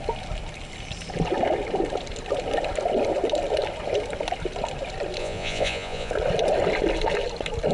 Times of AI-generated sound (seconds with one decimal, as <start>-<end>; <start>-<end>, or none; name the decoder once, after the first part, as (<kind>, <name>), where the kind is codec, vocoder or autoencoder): 5.2-6.1 (vocoder, Vocos)